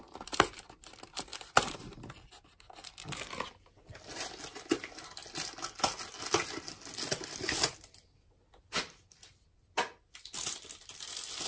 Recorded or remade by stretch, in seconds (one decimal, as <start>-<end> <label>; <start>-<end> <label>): 0.0-11.5 recorded